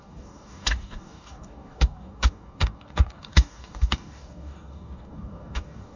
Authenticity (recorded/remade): remade